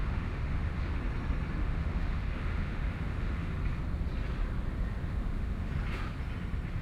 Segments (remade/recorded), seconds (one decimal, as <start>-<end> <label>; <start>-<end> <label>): 0.0-1.0 remade; 1.0-1.6 recorded; 1.6-3.5 remade; 3.5-5.0 recorded; 5.0-5.7 remade; 5.7-6.8 recorded

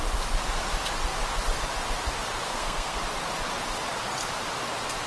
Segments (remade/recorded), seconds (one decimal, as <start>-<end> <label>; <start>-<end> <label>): 0.0-2.5 recorded; 2.5-3.0 remade; 3.0-5.1 recorded

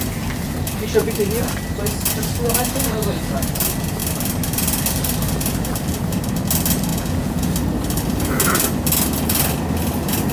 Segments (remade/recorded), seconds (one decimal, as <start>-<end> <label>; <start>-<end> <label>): 0.0-6.9 recorded; 6.9-7.5 remade; 7.5-10.3 recorded